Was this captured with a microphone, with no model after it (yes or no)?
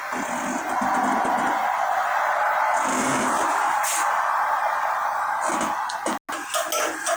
yes